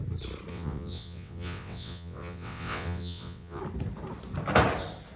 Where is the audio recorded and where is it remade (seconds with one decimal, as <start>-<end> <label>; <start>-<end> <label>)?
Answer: 0.0-0.5 recorded; 0.5-3.6 remade; 3.6-5.2 recorded